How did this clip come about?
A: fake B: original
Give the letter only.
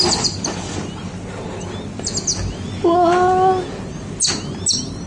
B